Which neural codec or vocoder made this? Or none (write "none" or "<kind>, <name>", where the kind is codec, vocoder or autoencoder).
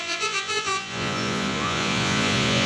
vocoder, Vocos